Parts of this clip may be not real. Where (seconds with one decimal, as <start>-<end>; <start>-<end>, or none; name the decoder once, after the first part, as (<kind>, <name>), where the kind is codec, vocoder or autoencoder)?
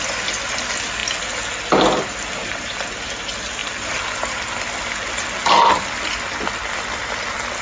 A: 2.4-3.1 (vocoder, BigVGAN v2); 3.6-7.6